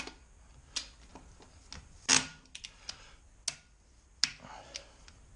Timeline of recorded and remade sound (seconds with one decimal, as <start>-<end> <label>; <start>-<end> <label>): 0.0-5.4 recorded